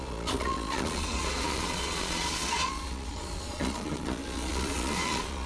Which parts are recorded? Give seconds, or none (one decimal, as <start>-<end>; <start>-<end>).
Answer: none